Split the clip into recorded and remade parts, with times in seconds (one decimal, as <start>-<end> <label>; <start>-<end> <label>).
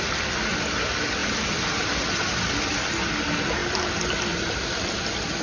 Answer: 0.0-1.2 recorded; 1.2-2.6 remade; 2.6-3.6 recorded; 3.6-5.0 remade; 5.0-5.4 recorded